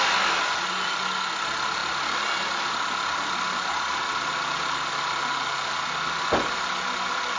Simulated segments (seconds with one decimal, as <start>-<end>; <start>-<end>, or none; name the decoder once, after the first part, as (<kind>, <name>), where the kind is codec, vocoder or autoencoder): none